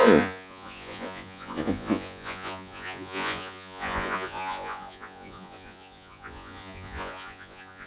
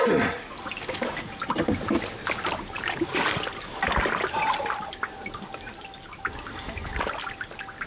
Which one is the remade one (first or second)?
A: first